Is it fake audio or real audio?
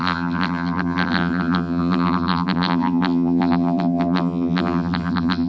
fake